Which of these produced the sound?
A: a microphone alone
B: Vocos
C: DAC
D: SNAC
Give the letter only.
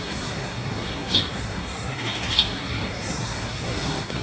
D